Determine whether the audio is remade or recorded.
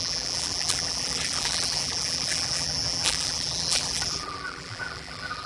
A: remade